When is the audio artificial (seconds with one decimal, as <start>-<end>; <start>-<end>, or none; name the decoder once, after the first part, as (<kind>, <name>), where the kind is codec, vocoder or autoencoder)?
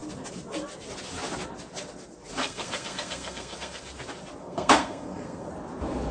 2.4-3.8 (codec, SNAC); 4.4-5.5